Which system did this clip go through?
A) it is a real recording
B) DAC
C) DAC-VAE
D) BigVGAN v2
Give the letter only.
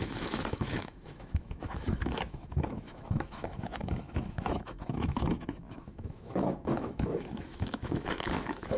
C